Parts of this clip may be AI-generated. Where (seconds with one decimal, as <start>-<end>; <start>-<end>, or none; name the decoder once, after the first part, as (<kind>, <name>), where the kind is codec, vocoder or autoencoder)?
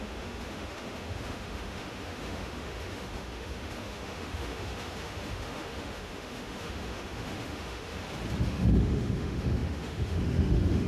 0.0-7.9 (autoencoder, DAC-VAE); 8.4-10.9